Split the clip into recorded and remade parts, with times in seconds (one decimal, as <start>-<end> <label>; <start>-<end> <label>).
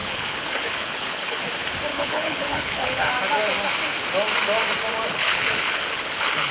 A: 0.0-1.4 remade; 1.4-1.9 recorded; 1.9-3.1 remade; 3.1-5.1 recorded; 5.1-6.5 remade